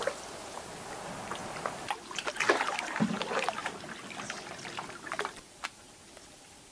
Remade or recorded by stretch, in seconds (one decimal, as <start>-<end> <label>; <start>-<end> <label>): 0.0-6.7 recorded

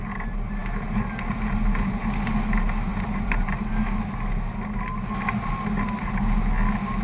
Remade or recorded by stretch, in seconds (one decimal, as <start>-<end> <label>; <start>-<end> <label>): 0.0-2.9 recorded; 2.9-3.7 remade; 3.7-7.0 recorded

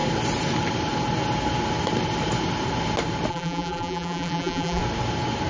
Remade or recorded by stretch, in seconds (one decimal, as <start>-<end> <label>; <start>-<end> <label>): 0.0-3.3 recorded; 3.3-4.8 remade; 4.8-5.5 recorded

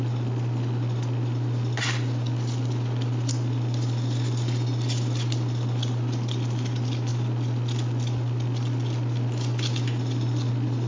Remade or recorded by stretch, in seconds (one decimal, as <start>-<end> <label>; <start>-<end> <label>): 0.0-10.9 recorded

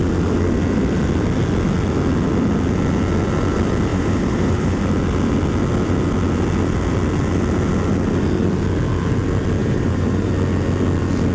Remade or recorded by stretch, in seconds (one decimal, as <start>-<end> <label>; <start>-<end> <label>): 0.0-3.9 recorded; 3.9-4.8 remade; 4.8-9.6 recorded; 9.6-10.3 remade; 10.3-11.3 recorded

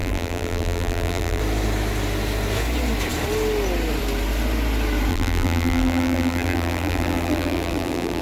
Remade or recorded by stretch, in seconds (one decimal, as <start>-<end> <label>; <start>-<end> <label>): 0.0-1.4 remade; 1.4-5.1 recorded; 5.1-8.2 remade

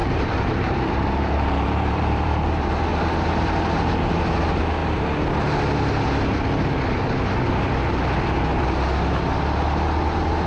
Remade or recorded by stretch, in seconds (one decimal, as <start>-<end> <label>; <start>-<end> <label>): 0.0-4.2 remade; 4.2-10.5 recorded